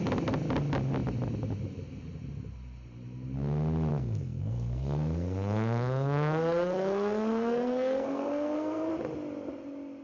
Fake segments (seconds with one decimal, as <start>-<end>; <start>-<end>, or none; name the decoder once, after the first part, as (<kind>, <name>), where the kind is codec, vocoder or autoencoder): 3.9-8.9 (codec, SNAC)